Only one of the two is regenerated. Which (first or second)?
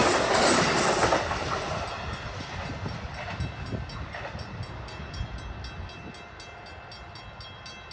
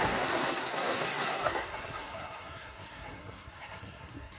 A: second